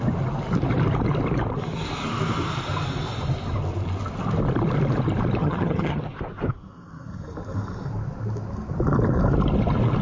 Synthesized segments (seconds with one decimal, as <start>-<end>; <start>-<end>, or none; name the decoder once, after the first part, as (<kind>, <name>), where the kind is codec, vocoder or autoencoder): 5.4-6.0 (vocoder, HiFi-GAN)